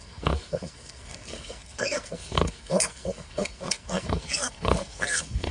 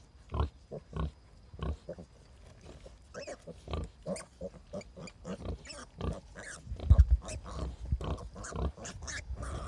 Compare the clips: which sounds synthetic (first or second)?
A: first